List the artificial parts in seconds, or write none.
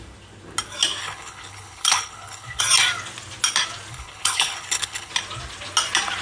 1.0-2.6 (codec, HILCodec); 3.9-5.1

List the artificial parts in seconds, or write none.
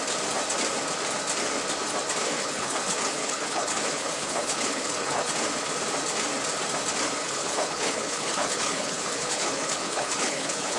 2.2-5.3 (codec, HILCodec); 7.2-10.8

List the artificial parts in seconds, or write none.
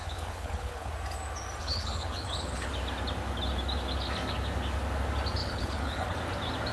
0.0-0.9 (codec, HILCodec); 1.6-2.7; 5.4-6.2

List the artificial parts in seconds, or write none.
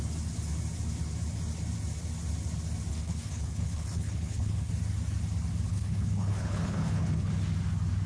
2.9-4.7 (codec, HILCodec); 5.7-7.3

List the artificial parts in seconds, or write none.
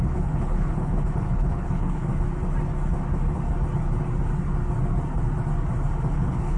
0.0-2.1 (codec, HILCodec); 6.1-6.6